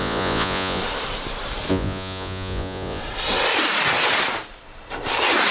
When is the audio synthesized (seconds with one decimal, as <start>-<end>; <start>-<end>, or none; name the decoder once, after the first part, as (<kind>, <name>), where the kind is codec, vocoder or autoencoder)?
0.0-0.8 (vocoder, Vocos); 1.7-3.0